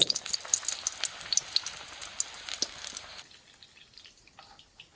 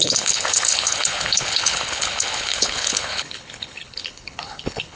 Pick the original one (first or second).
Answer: first